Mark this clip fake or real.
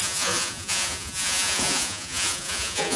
fake